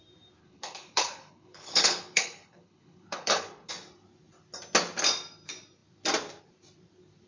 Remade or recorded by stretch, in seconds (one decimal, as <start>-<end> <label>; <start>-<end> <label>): 0.0-0.4 recorded; 0.4-3.7 remade; 3.7-7.3 recorded